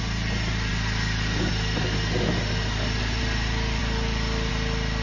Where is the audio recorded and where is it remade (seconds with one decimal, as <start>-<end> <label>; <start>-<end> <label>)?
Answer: 0.0-5.0 recorded